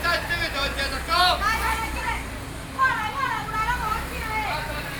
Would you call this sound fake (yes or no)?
no